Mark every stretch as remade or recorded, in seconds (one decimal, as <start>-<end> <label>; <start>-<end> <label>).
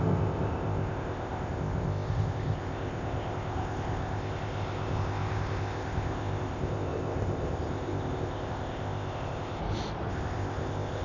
0.0-9.6 remade; 9.6-10.1 recorded; 10.1-11.0 remade